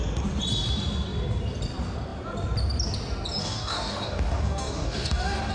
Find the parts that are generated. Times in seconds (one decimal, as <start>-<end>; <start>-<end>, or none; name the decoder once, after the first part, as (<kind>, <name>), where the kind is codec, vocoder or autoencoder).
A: 3.4-5.5 (codec, DAC)